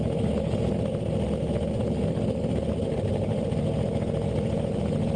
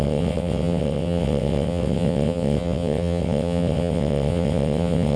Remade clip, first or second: second